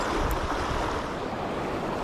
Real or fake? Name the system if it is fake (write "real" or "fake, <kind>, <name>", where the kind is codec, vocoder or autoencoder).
real